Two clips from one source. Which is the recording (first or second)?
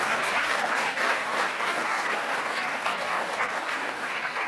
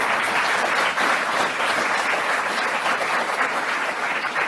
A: second